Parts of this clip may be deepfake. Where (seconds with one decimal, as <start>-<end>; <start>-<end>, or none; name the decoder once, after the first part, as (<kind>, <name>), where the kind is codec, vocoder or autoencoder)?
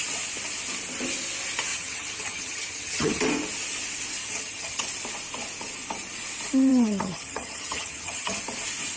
1.7-3.2 (vocoder, HiFi-GAN); 4.2-4.8; 6.7-8.4